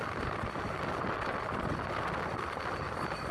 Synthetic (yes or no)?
no